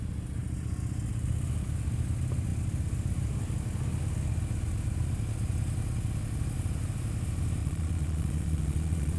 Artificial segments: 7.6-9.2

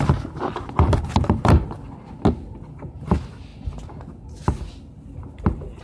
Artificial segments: none

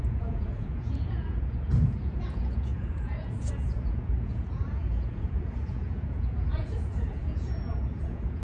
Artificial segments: 0.0-8.4

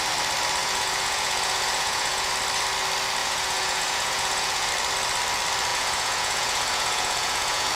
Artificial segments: 0.6-2.3; 3.2-4.7; 5.7-7.7